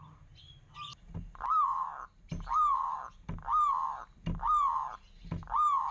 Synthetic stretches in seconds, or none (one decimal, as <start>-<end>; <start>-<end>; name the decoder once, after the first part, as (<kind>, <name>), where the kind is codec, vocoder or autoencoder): none